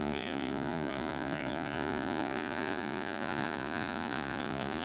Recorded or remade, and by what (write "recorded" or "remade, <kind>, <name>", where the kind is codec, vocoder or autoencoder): remade, vocoder, Vocos